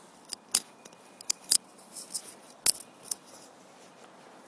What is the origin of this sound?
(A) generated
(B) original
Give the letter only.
B